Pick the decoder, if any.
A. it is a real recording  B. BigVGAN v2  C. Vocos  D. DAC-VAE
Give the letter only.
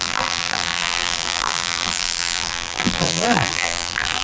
B